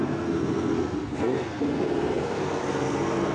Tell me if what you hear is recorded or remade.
remade